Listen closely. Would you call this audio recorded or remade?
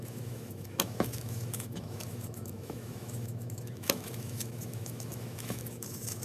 remade